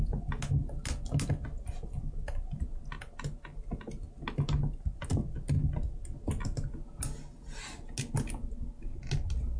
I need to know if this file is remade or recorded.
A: recorded